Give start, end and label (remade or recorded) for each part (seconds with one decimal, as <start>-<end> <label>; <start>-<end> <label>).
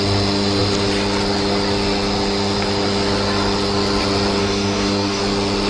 0.0-4.4 recorded; 4.4-5.2 remade; 5.2-5.7 recorded